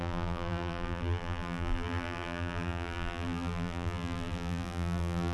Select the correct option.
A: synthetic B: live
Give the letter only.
A